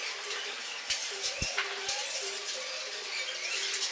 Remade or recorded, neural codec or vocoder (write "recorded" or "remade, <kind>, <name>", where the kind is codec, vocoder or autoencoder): recorded